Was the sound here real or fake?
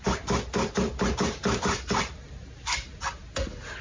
real